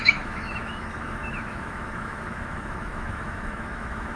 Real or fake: fake